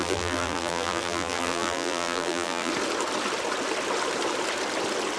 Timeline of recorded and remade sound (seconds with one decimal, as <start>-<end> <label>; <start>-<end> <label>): 0.0-2.7 remade; 2.7-5.2 recorded